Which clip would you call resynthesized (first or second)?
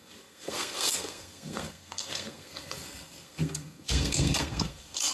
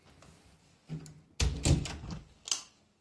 first